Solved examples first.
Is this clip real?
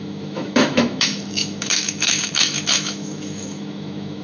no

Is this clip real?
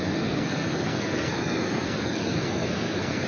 no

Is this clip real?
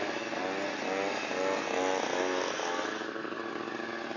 yes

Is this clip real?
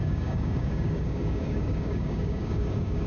no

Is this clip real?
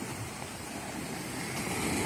yes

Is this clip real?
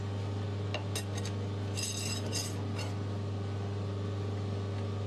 yes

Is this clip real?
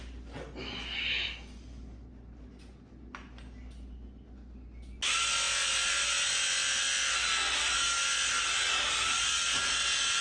yes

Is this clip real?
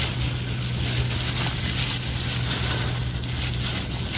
yes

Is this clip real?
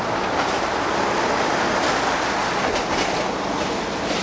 yes